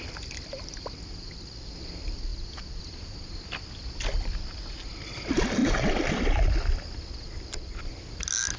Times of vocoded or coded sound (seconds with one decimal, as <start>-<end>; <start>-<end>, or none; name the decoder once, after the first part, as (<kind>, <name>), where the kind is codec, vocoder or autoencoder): none

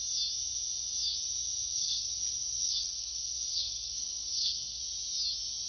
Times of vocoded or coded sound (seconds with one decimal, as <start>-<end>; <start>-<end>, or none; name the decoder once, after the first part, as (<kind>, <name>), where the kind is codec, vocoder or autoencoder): 1.8-4.8 (codec, SNAC)

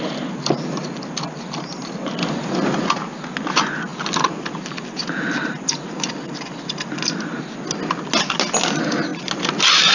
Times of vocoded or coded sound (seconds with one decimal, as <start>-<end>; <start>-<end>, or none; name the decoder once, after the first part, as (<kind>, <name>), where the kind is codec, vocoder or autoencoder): none

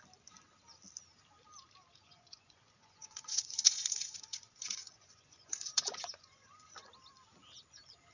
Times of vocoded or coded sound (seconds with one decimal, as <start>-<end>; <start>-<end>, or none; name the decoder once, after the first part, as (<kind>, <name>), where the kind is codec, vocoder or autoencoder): 2.0-6.9 (vocoder, Vocos)